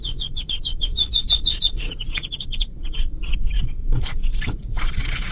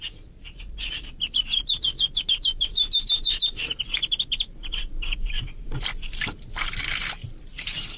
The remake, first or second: first